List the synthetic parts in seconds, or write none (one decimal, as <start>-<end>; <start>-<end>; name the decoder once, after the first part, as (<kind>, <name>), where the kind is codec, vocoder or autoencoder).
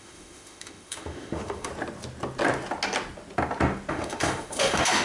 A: 0.0-1.7 (autoencoder, DAC-VAE); 3.9-5.0